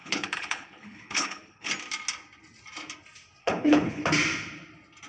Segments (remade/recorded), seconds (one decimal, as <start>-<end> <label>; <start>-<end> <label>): 0.0-1.7 remade; 1.7-3.4 recorded; 3.4-4.0 remade; 4.0-5.1 recorded